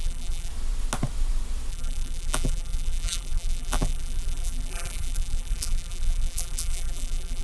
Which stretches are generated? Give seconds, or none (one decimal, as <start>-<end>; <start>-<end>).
0.0-0.5; 1.7-7.4